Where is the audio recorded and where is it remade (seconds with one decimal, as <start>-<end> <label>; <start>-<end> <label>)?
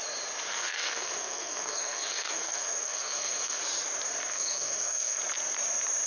0.0-0.5 recorded; 0.5-3.6 remade; 3.6-4.3 recorded; 4.3-5.2 remade; 5.2-6.1 recorded